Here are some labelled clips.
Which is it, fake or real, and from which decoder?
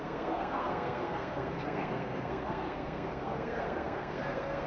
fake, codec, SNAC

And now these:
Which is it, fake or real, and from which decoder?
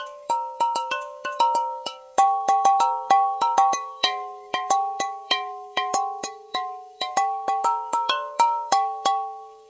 fake, codec, DAC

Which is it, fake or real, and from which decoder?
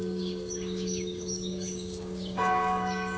fake, codec, DAC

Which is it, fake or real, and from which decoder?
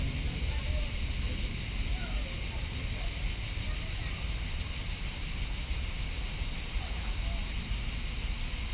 real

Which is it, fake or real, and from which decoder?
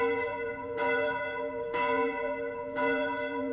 fake, vocoder, Vocos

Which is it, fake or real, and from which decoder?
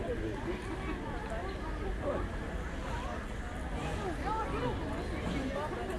real